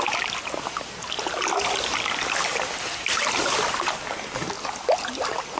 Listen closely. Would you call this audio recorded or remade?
recorded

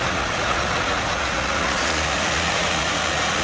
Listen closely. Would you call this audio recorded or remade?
remade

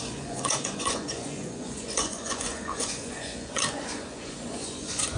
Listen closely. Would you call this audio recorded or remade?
remade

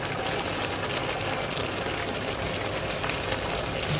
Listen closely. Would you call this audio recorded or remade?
recorded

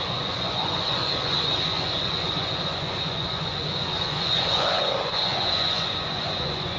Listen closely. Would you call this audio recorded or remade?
remade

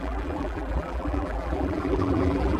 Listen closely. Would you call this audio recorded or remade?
remade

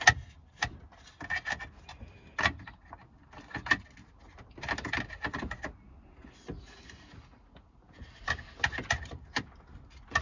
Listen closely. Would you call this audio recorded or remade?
recorded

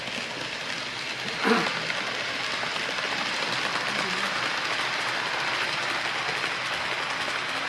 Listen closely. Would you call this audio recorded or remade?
recorded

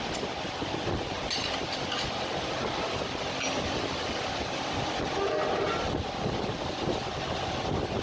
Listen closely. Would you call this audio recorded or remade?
recorded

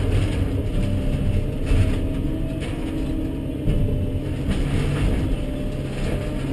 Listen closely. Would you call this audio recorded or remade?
recorded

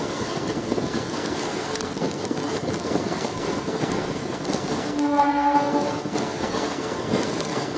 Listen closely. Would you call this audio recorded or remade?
remade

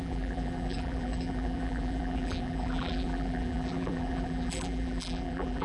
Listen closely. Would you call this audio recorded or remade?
remade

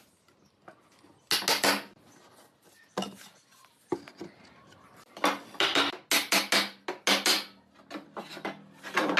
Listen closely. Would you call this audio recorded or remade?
recorded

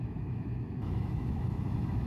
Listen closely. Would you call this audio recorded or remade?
remade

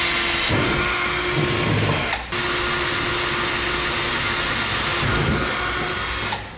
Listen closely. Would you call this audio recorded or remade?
recorded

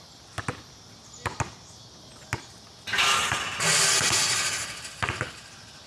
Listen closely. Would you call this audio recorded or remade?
recorded